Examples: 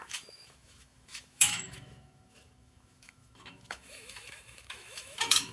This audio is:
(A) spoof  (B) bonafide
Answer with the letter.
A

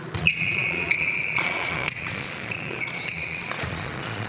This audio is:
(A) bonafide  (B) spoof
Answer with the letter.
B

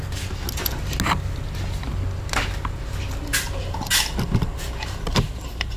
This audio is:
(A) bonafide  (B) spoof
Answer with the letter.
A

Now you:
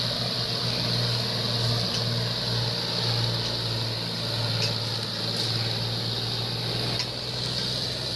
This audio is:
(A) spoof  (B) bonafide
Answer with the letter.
B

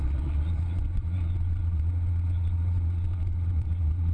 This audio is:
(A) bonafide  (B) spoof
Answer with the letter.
B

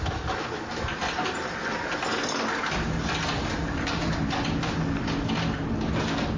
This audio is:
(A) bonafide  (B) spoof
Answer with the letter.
A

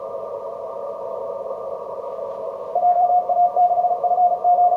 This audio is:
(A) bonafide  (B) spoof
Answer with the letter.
B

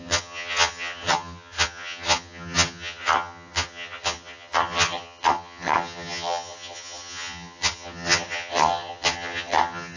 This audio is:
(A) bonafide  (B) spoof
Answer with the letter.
B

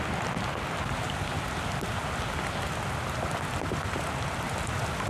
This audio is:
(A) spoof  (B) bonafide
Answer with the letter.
B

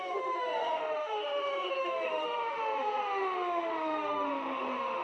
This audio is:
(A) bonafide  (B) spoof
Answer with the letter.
B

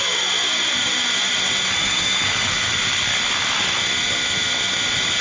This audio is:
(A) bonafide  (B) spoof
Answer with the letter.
A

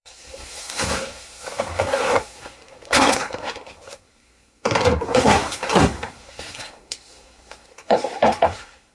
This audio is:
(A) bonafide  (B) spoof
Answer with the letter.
B